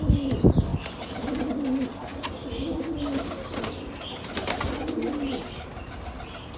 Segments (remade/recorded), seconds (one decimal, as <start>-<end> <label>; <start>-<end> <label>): 0.0-0.7 recorded; 0.7-1.5 remade; 1.5-6.6 recorded